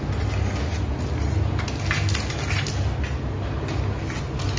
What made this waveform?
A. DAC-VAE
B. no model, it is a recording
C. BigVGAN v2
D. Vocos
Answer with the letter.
B